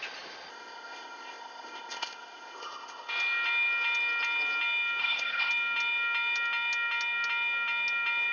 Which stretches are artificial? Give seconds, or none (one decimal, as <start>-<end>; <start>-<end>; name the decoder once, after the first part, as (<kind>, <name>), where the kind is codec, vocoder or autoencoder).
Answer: 0.5-3.1 (codec, ZipCodec); 5.0-5.5